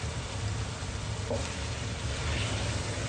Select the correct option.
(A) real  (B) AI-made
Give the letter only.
A